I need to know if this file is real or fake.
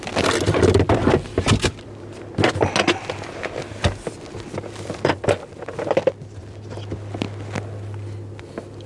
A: real